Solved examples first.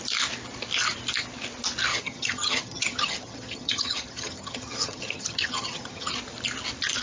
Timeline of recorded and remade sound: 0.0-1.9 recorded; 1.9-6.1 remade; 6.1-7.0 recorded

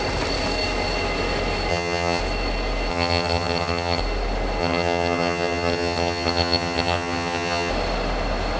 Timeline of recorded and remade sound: 0.0-1.7 recorded; 1.7-2.2 remade; 2.2-2.9 recorded; 2.9-4.0 remade; 4.0-4.6 recorded; 4.6-7.7 remade; 7.7-8.6 recorded

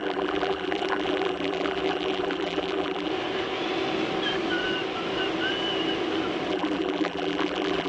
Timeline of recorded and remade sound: 0.0-3.1 remade; 3.1-6.5 recorded; 6.5-7.9 remade

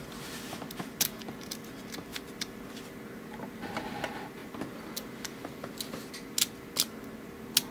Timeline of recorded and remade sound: 0.0-2.1 recorded; 2.1-3.0 remade; 3.0-7.7 recorded